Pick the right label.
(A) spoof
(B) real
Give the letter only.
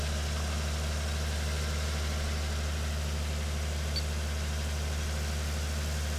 B